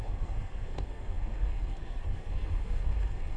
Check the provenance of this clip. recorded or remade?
remade